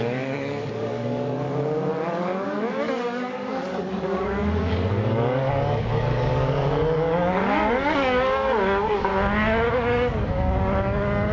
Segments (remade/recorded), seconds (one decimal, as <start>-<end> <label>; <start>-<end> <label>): 0.0-9.1 remade; 9.1-9.7 recorded; 9.7-11.3 remade